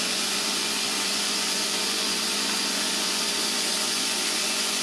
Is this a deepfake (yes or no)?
yes